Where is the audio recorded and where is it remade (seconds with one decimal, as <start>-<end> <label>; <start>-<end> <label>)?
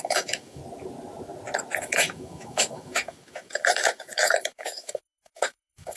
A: 0.0-0.6 remade; 0.6-1.8 recorded; 1.8-6.0 remade